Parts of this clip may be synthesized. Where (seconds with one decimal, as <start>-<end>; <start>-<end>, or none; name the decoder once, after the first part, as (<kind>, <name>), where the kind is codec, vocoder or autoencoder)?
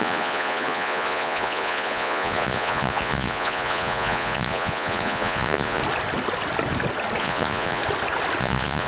0.0-5.8 (vocoder, Vocos); 7.2-7.8; 8.4-8.9